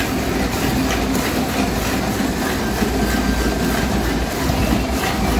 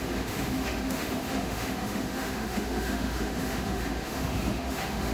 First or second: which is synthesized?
second